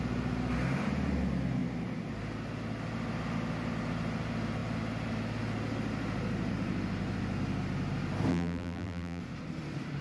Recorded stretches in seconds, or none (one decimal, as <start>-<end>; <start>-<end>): 0.0-8.3; 9.2-10.0

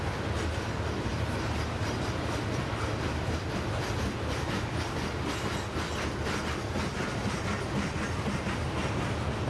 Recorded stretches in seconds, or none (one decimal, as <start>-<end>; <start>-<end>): 0.0-1.1; 4.6-9.5

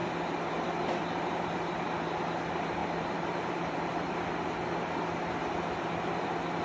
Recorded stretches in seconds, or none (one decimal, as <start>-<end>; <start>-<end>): 0.0-2.8; 3.9-6.6